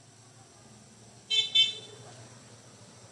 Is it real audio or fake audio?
real